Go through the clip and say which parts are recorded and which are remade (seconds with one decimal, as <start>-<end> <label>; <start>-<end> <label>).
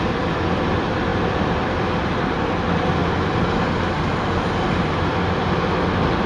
0.0-6.3 recorded